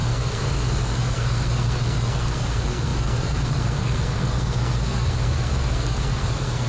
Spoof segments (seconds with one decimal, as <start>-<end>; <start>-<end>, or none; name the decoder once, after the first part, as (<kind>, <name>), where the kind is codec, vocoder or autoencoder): 0.0-6.7 (codec, SNAC)